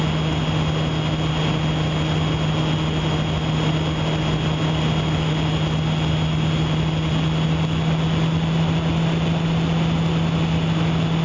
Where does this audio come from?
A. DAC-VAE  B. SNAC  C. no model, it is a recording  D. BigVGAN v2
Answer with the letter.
C